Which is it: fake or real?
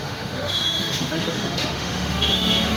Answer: fake